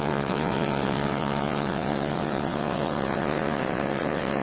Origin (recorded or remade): remade